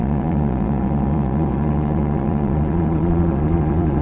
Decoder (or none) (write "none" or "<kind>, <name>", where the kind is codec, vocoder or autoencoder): vocoder, Vocos